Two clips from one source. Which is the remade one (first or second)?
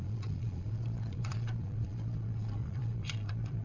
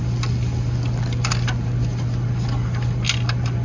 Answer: first